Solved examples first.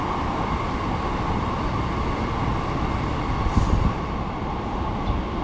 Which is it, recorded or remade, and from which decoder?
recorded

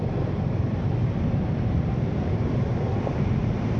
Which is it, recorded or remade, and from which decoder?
recorded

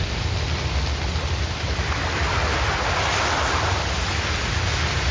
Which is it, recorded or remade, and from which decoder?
recorded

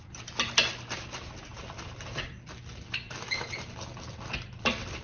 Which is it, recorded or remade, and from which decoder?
recorded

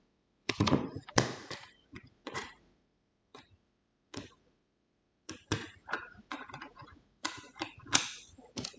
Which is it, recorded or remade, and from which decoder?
remade, vocoder, Vocos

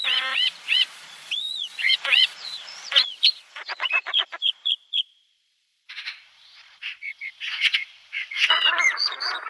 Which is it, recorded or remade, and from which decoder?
remade, vocoder, Vocos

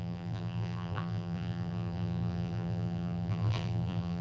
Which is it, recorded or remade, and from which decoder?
remade, vocoder, BigVGAN v2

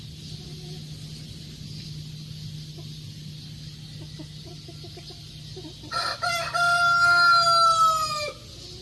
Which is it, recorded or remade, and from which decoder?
recorded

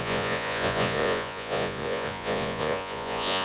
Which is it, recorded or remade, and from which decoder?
remade, vocoder, Vocos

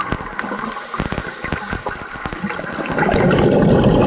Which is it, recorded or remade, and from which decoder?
recorded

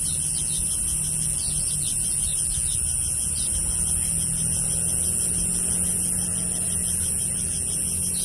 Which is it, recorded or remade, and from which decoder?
recorded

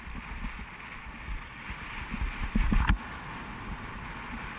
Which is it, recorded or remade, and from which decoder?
recorded